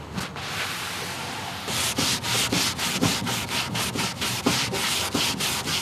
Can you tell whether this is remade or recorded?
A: recorded